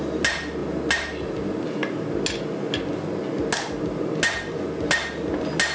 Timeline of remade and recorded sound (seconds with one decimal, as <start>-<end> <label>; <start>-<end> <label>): 0.0-5.7 recorded